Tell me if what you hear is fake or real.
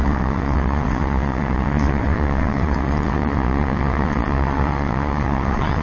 fake